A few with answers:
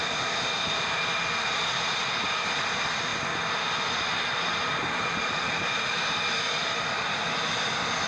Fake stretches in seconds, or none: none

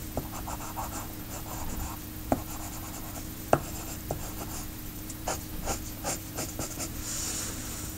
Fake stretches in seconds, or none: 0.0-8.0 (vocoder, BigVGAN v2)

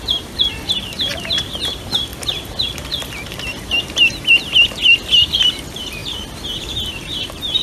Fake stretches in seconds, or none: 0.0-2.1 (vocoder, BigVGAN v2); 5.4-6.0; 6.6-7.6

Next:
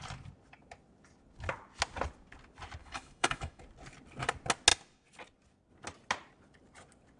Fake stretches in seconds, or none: 2.8-3.6 (autoencoder, DAC-VAE)

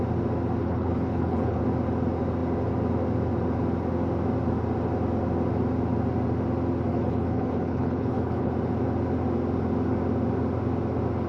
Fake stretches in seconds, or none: 0.6-1.6 (codec, HILCodec); 6.9-8.5

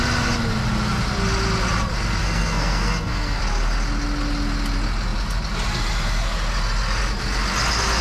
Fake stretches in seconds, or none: 2.2-3.4 (codec, SNAC)

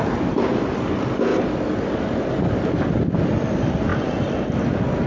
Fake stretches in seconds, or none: none